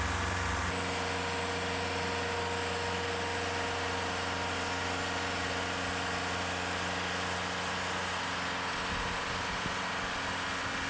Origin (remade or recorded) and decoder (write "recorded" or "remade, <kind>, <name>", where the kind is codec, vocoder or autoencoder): recorded